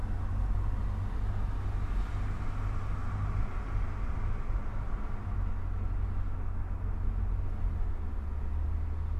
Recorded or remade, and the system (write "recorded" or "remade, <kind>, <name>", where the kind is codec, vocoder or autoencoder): recorded